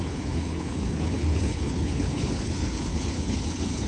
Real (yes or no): no